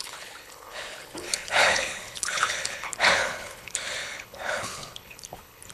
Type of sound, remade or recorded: remade